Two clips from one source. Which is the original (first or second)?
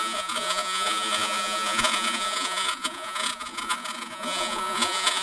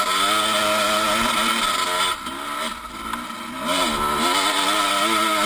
second